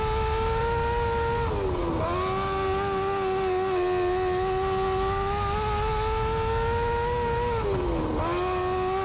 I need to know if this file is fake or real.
real